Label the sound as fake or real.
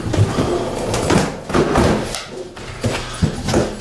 real